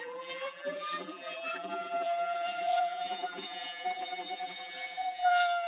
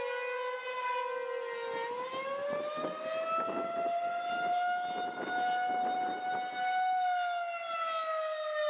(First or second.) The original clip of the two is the second